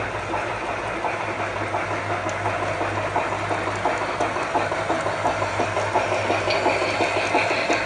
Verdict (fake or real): real